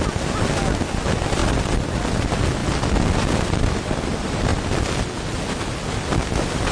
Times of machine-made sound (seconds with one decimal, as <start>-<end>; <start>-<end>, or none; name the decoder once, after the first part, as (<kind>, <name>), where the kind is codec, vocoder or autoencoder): 1.4-1.9 (vocoder, BigVGAN v2); 4.5-5.2